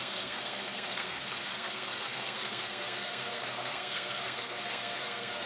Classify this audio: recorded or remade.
remade